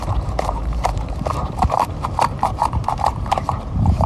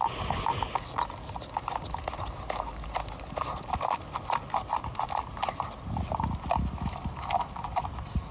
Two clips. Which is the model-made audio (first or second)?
first